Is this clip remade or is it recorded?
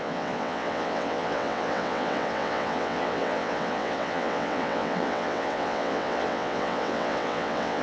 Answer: remade